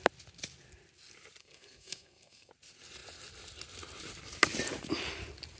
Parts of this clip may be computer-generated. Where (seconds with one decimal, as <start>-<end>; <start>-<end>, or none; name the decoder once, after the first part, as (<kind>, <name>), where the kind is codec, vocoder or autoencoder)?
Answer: 1.4-2.5 (codec, SNAC)